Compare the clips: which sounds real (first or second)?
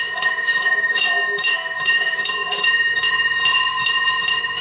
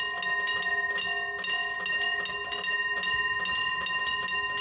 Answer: second